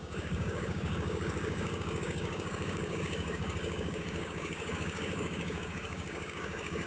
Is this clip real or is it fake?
fake